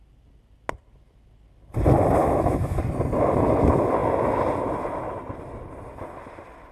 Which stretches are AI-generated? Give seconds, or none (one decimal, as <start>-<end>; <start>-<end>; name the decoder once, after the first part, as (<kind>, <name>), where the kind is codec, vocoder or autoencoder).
2.2-2.8 (autoencoder, DAC-VAE)